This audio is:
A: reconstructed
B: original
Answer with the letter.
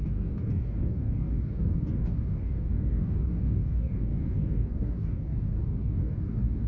A